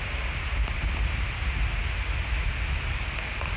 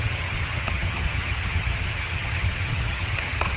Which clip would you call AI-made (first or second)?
second